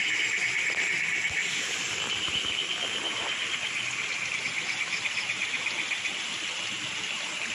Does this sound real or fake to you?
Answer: real